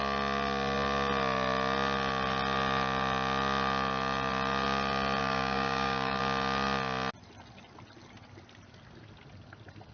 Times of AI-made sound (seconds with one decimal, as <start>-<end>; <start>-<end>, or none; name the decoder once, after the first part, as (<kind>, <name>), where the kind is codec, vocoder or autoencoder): 5.2-6.2 (codec, DAC)